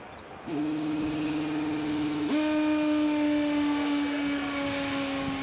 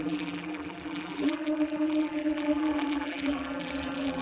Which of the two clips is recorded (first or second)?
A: first